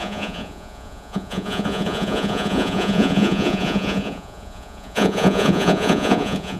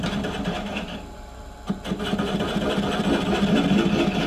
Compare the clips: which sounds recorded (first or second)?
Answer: second